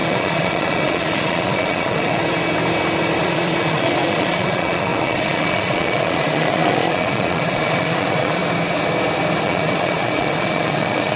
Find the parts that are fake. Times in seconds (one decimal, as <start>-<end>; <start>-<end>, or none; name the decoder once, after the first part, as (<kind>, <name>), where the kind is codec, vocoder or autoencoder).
0.0-2.2 (vocoder, Vocos); 3.2-8.4; 9.4-11.2